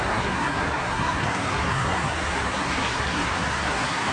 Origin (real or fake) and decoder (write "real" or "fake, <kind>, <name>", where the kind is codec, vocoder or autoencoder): fake, codec, SNAC